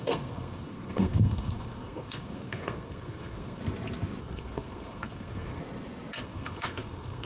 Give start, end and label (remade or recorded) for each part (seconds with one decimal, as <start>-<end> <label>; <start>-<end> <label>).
0.0-3.6 remade; 3.6-4.2 recorded; 4.2-5.6 remade; 5.6-6.2 recorded; 6.2-7.3 remade